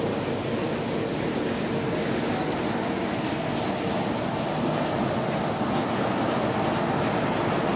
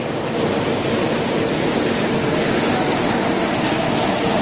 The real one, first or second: first